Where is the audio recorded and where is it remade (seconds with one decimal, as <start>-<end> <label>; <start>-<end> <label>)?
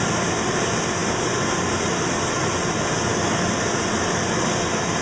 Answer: 0.0-5.0 recorded